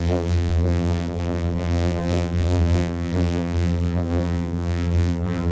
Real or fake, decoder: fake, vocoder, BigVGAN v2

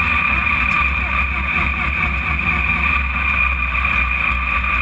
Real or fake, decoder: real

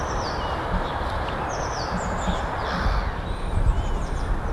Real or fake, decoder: real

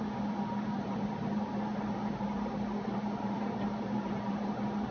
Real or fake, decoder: fake, vocoder, BigVGAN v2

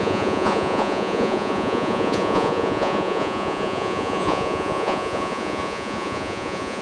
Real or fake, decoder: fake, vocoder, Vocos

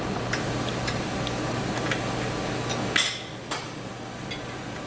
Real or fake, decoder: real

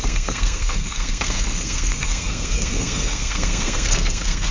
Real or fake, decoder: fake, codec, SNAC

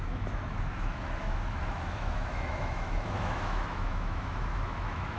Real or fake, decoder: fake, autoencoder, DAC-VAE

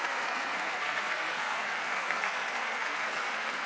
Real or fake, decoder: fake, codec, SNAC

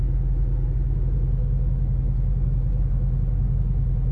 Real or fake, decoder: real